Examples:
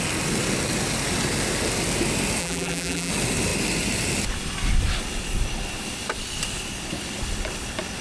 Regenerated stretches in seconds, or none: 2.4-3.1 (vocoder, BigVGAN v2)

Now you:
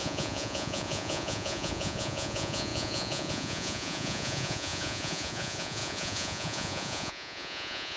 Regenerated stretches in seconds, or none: 0.0-8.0 (vocoder, Vocos)

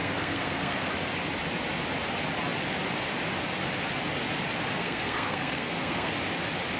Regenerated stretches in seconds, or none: 0.0-0.9 (codec, SNAC); 4.8-6.1

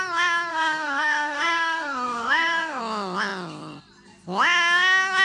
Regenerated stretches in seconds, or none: 0.5-2.8 (codec, DAC)

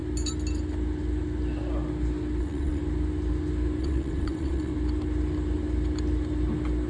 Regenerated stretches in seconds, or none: 2.4-2.8 (vocoder, WaveNeXt); 3.8-4.7

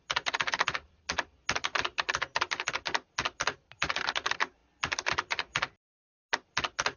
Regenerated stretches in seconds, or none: none